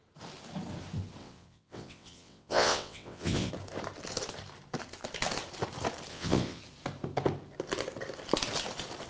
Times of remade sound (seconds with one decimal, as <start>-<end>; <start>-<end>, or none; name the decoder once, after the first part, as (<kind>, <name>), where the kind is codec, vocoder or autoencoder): 1.2-3.5 (vocoder, WaveNeXt); 6.1-6.6